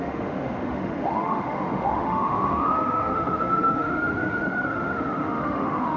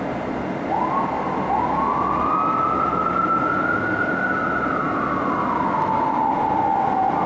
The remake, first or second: first